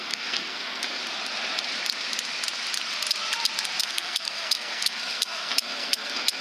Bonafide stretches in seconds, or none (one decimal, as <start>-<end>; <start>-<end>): 1.0-3.8